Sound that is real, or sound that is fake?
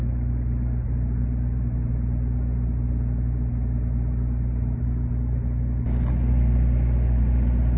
real